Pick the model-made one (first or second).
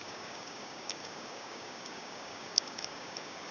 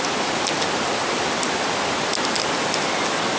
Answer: first